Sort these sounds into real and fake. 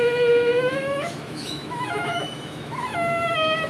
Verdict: fake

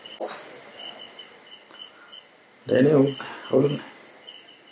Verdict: real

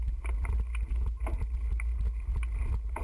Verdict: real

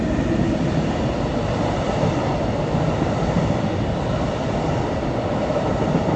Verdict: real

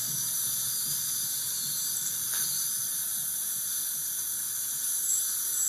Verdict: real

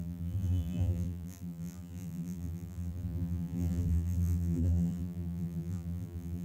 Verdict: fake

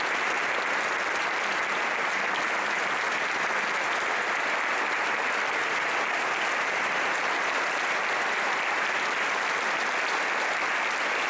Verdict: real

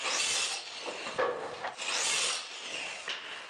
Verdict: real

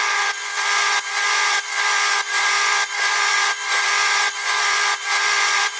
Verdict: fake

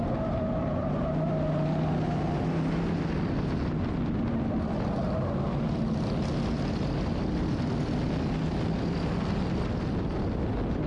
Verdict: real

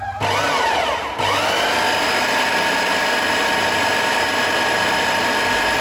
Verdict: real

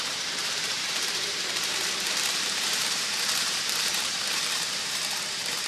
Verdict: fake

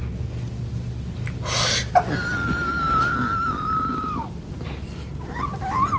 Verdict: real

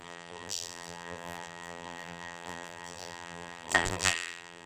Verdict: fake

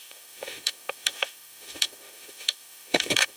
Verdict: fake